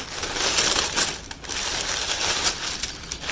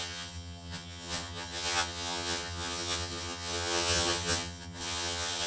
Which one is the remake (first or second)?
second